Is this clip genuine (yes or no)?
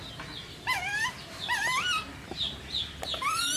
yes